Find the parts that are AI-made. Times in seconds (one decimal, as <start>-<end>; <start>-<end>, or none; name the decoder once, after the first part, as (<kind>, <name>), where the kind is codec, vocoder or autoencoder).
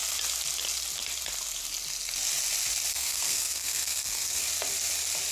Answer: 2.9-4.4 (codec, SNAC)